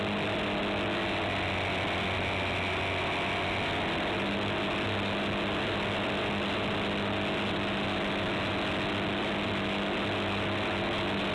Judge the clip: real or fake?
real